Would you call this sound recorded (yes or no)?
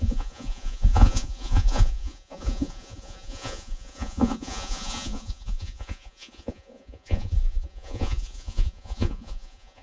no